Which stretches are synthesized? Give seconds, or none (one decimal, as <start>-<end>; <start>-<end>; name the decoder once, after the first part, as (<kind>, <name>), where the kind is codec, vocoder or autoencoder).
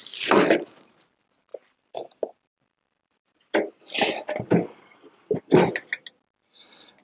0.0-0.8 (vocoder, BigVGAN v2); 1.5-5.7